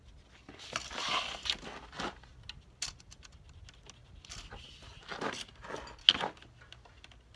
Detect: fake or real real